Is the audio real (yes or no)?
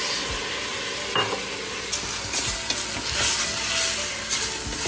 yes